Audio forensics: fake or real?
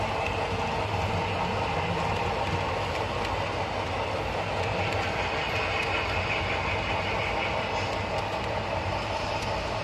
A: real